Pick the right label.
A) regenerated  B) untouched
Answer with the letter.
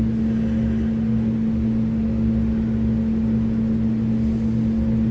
B